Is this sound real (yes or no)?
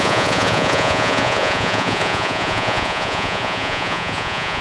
no